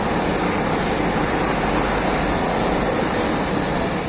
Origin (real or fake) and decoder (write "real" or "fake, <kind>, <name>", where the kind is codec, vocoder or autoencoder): real